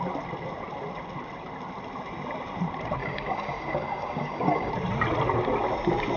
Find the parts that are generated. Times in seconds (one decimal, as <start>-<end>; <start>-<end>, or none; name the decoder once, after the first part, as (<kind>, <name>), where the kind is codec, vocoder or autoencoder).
3.0-4.7 (codec, DAC)

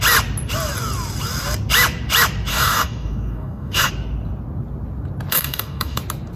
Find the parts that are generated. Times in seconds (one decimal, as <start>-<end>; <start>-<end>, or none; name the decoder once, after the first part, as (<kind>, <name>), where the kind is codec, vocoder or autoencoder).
2.5-3.9 (codec, DAC); 5.3-6.0

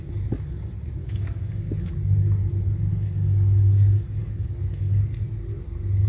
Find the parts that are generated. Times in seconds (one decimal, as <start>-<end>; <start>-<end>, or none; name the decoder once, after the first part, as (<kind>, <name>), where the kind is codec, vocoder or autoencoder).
1.0-1.9 (codec, DAC); 2.9-5.0

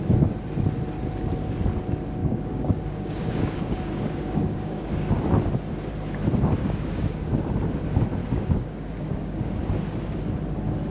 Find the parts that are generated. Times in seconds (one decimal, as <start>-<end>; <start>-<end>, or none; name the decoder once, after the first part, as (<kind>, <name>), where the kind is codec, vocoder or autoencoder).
2.2-5.2 (codec, DAC); 6.6-7.3; 8.2-9.6